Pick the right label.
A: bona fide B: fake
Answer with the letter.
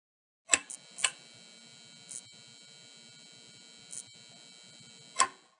A